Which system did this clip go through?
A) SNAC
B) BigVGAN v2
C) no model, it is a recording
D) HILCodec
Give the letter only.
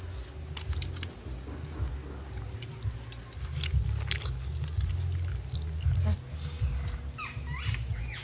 C